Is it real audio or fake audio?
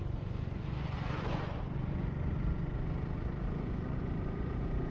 fake